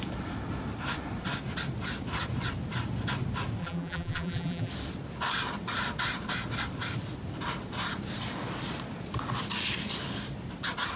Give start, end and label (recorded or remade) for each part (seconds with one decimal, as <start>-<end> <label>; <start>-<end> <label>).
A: 0.0-3.6 recorded; 3.6-4.7 remade; 4.7-11.0 recorded